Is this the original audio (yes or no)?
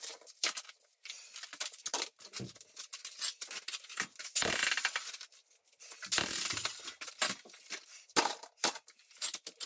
yes